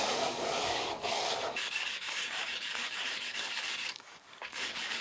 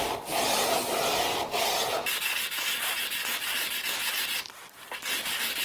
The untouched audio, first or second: second